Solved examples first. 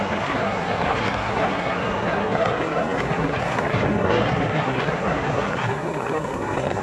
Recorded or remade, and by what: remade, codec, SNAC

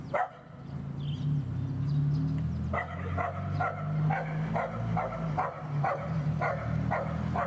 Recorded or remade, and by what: recorded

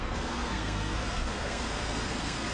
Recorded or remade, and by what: remade, codec, SNAC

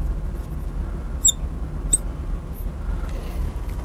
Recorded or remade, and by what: recorded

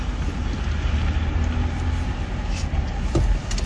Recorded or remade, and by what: recorded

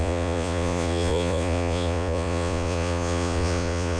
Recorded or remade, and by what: remade, vocoder, Vocos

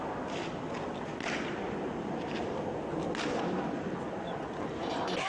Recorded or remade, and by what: recorded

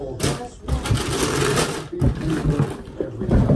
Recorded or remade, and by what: recorded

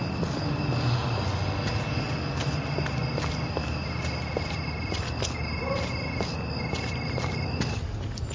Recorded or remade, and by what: recorded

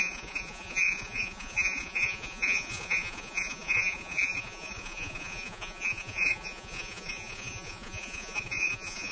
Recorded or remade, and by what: remade, vocoder, Vocos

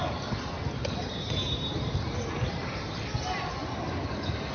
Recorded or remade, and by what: recorded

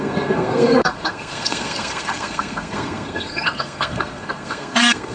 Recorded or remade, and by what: remade, codec, SNAC